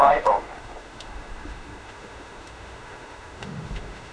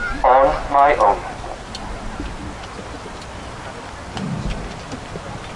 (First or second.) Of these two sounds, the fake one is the first